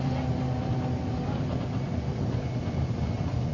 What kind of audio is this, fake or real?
real